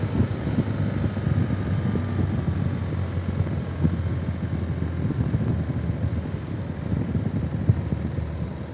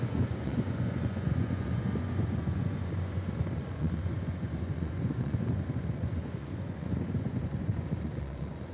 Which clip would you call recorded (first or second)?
first